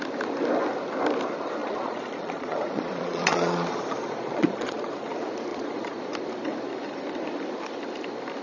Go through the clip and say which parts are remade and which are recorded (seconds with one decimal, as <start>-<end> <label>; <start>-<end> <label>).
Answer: 0.0-1.6 recorded; 1.6-5.1 remade; 5.1-5.5 recorded; 5.5-6.0 remade; 6.0-8.4 recorded